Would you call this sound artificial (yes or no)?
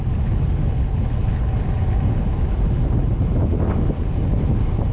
no